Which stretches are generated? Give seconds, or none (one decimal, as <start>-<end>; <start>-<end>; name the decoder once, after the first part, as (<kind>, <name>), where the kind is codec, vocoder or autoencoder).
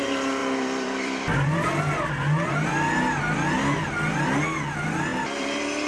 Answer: 0.4-1.8 (vocoder, BigVGAN v2); 5.1-5.9